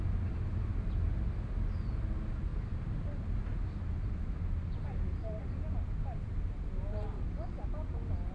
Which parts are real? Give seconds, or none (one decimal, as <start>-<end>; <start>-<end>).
0.0-8.3

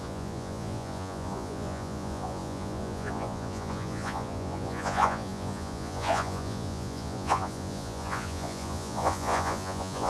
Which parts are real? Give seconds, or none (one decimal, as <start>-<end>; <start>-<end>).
none

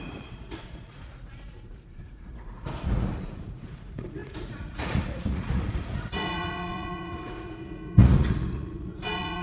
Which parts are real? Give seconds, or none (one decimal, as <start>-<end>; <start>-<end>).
none